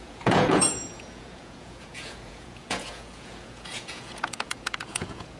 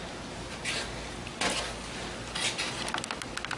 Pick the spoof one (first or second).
first